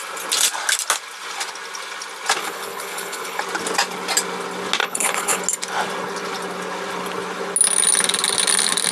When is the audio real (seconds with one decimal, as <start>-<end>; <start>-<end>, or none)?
0.0-2.4; 3.4-4.8; 5.4-8.9